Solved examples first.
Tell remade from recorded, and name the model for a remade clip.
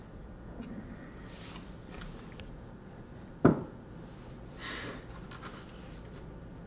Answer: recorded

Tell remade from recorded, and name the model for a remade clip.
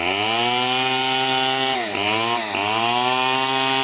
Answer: recorded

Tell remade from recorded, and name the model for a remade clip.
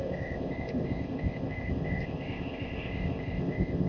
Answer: remade, codec, ZipCodec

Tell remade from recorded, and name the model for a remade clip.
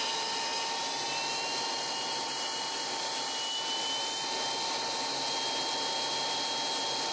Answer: recorded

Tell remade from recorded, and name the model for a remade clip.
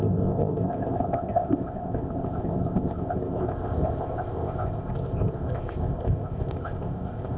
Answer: remade, codec, ZipCodec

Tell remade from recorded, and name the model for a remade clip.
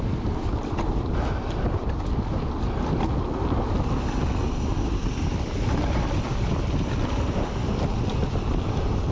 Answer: recorded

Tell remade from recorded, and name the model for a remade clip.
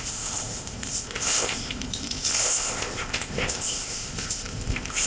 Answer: remade, codec, ZipCodec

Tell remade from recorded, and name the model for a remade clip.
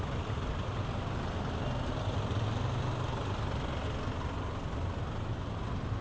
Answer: recorded